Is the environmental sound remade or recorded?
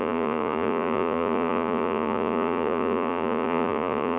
remade